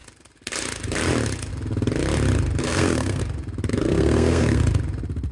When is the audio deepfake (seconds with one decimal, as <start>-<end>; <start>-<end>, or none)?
2.6-3.2; 3.7-4.6